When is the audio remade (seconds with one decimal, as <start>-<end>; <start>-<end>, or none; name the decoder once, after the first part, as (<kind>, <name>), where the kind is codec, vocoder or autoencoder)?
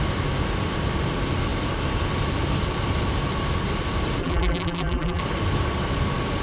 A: 4.2-5.2 (vocoder, BigVGAN v2)